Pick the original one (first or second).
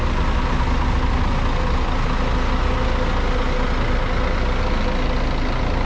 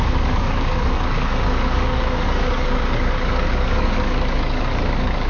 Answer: first